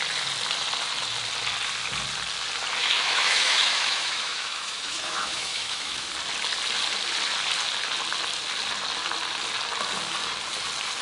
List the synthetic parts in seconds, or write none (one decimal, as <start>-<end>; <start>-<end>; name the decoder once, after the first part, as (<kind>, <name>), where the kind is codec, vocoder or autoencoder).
2.8-6.1 (autoencoder, DAC-VAE)